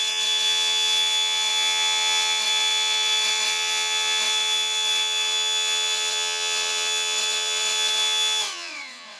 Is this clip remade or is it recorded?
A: remade